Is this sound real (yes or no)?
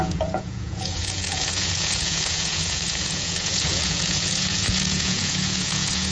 no